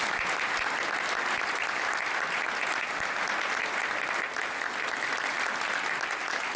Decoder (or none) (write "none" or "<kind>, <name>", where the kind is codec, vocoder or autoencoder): none